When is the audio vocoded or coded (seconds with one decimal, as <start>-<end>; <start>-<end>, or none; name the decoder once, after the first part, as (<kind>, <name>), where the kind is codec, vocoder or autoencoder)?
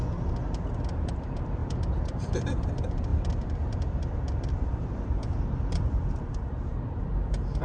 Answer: 1.6-2.3 (vocoder, BigVGAN v2); 3.1-7.0